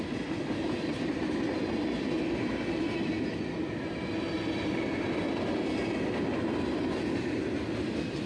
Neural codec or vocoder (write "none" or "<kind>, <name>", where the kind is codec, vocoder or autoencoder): none